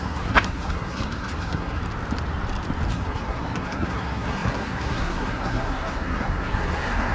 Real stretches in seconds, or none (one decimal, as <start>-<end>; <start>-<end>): 1.8-2.9